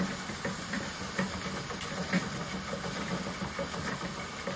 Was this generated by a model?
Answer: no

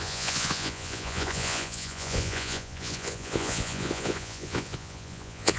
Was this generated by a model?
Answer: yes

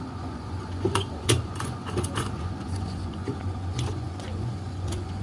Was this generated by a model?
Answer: yes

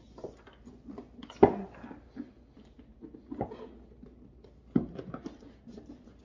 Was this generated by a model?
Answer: no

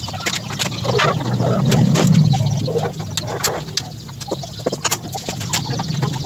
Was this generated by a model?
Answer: no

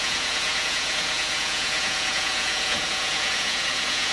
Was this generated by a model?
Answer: yes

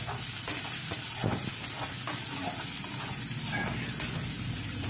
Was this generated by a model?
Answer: no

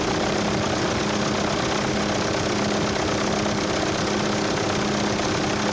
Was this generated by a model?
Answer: no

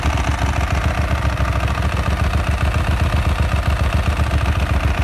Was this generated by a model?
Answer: no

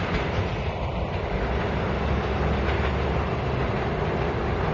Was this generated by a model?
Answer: no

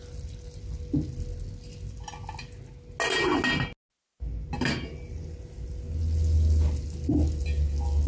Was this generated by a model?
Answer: no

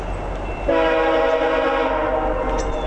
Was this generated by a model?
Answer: no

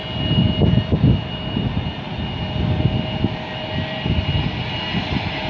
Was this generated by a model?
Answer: no